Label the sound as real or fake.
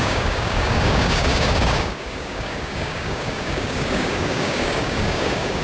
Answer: fake